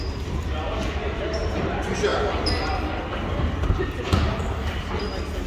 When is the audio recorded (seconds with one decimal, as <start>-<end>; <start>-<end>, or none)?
0.0-5.5